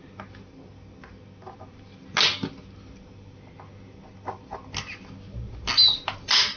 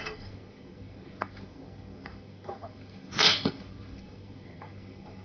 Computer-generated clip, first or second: second